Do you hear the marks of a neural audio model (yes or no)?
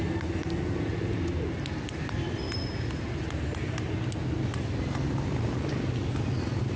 no